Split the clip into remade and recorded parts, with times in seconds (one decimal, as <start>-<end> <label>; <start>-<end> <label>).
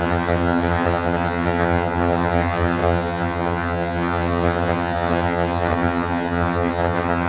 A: 0.0-7.3 remade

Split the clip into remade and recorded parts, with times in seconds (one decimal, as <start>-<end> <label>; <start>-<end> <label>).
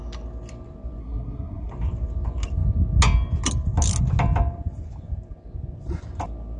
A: 0.0-1.0 recorded; 1.0-1.7 remade; 1.7-6.6 recorded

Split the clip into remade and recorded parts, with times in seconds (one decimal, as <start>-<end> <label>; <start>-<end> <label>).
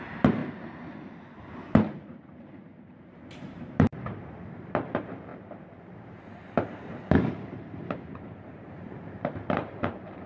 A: 0.0-0.4 remade; 0.4-1.4 recorded; 1.4-10.3 remade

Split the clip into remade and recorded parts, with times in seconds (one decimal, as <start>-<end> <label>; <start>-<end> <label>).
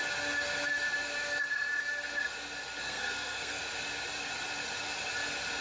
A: 0.0-2.8 recorded; 2.8-3.6 remade; 3.6-5.6 recorded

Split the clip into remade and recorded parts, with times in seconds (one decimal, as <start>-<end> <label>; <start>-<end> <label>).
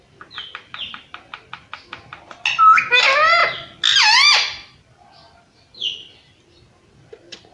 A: 0.0-7.5 recorded